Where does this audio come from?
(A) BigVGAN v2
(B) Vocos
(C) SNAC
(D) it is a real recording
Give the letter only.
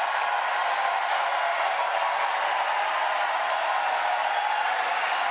D